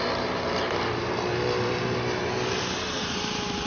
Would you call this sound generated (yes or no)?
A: yes